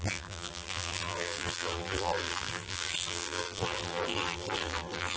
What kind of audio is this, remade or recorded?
remade